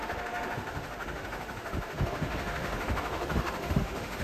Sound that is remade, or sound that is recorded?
remade